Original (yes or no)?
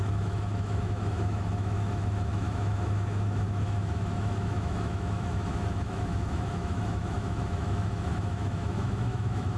no